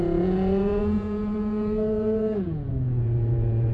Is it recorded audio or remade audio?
remade